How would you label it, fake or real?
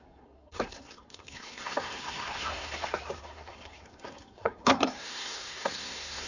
fake